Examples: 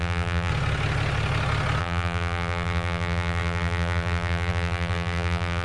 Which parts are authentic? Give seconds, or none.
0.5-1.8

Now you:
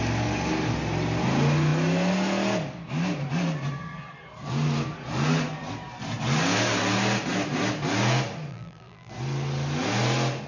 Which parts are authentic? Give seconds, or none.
0.0-8.5; 9.1-10.5

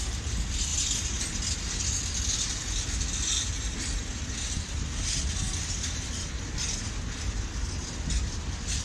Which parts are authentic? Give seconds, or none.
0.0-0.7; 1.2-8.8

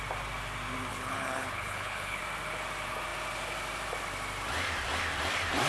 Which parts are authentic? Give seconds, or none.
0.0-0.9; 2.2-5.7

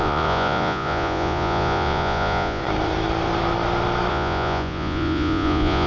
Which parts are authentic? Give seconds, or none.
2.6-4.1

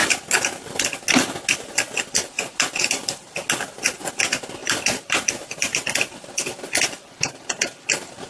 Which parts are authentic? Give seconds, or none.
0.0-4.6; 5.3-8.3

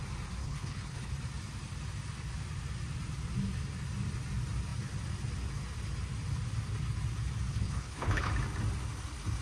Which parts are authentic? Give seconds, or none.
0.0-0.4; 1.1-7.5; 8.3-9.4